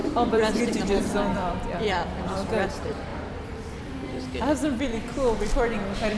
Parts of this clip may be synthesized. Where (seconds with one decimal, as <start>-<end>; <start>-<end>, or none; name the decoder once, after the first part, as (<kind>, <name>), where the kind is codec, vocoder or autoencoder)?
0.0-2.7 (vocoder, BigVGAN v2); 3.1-3.9